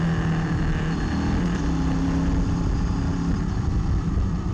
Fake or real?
real